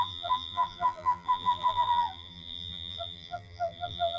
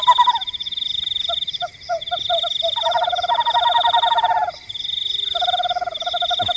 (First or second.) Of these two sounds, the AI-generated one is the first